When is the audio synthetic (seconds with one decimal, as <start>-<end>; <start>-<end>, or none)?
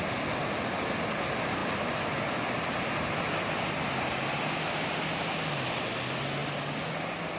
0.0-0.4; 1.1-1.6; 6.0-6.4; 7.0-7.4